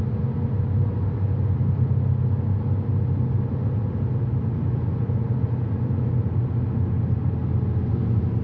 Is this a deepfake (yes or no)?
no